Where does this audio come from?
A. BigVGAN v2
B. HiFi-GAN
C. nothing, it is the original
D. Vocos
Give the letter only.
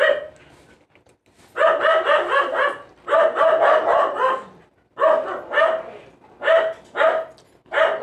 C